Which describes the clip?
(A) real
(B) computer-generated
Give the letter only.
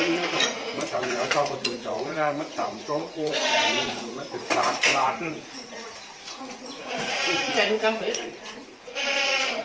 B